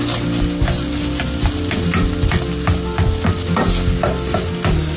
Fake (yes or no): no